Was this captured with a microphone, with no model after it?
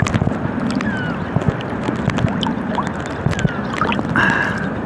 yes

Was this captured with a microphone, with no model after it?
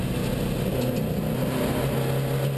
yes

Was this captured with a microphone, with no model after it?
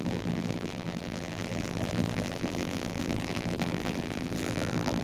no